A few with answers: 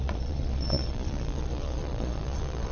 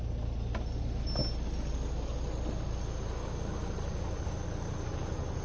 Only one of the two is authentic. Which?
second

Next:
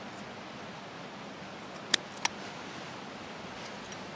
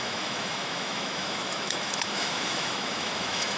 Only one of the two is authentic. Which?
first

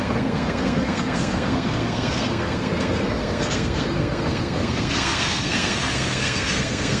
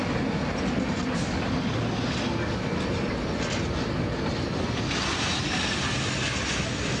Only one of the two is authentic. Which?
second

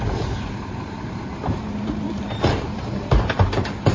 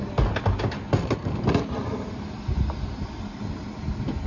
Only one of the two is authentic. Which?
second